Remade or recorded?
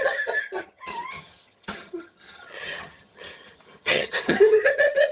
remade